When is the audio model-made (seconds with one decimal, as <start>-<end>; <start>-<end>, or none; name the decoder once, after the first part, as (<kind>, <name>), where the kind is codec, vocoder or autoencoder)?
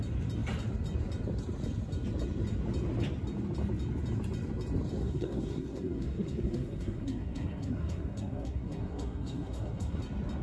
5.0-10.0 (codec, SNAC)